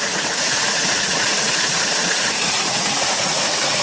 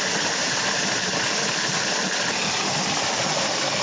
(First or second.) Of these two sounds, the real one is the second